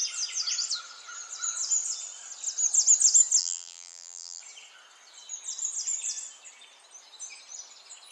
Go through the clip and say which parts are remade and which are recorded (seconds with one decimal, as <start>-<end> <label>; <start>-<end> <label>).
0.0-3.4 recorded; 3.4-4.4 remade; 4.4-8.1 recorded